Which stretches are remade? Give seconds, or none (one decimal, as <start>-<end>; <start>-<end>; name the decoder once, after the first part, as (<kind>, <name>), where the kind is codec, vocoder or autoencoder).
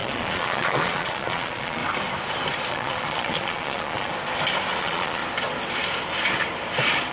0.0-1.8 (vocoder, Vocos); 2.7-4.1; 4.8-5.2